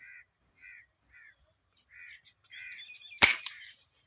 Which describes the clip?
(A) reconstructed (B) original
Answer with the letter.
A